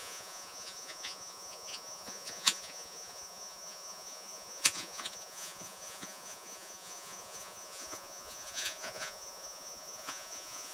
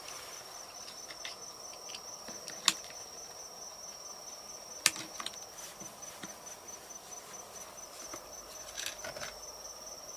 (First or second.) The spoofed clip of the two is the first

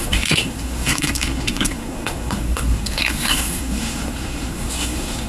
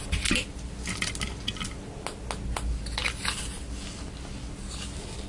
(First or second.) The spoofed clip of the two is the first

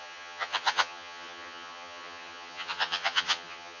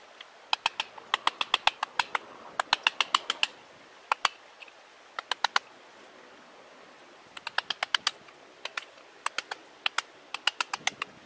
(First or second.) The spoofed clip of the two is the first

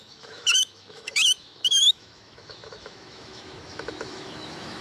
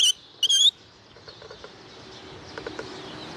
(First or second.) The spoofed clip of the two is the first